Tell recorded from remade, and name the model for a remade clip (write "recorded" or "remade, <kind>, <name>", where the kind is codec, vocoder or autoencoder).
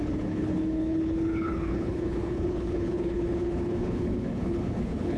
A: remade, codec, HILCodec